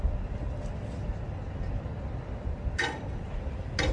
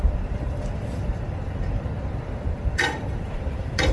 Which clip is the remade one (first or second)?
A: second